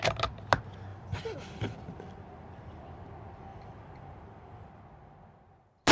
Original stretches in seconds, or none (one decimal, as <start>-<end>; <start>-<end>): 0.0-0.9; 3.0-3.5; 4.8-5.9